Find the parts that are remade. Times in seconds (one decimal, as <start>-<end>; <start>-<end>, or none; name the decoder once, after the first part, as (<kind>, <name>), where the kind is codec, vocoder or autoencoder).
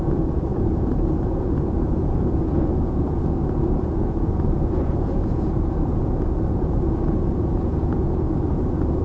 0.0-9.0 (vocoder, Vocos)